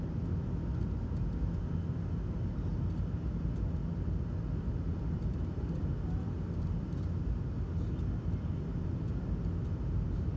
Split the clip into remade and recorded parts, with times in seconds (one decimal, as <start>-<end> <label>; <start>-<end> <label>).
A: 0.0-4.9 recorded; 4.9-5.7 remade; 5.7-10.4 recorded